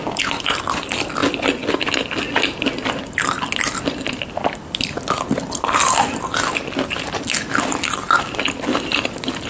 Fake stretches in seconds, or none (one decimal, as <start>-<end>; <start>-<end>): none